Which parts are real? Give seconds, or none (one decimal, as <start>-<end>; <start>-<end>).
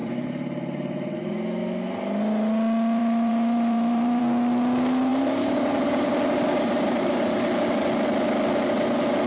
1.2-3.0; 4.2-5.1; 7.2-9.3